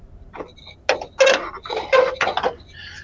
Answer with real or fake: real